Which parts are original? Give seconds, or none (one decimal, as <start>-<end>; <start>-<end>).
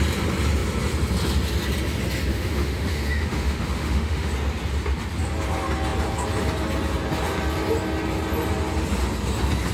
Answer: 0.0-2.3; 4.3-9.7